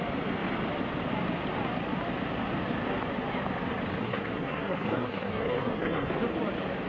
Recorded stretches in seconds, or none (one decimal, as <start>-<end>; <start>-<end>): 0.0-4.0; 6.1-6.9